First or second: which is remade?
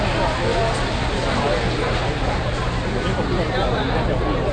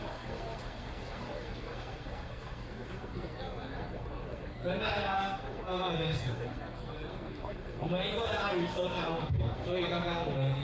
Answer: second